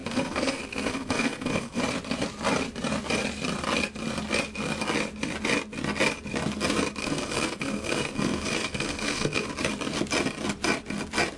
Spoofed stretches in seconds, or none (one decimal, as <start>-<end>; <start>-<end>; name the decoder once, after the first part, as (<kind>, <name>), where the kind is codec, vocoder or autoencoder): 0.0-1.8 (codec, SNAC); 7.0-9.5